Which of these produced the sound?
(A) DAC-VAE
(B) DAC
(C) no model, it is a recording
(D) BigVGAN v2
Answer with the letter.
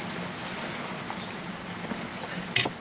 C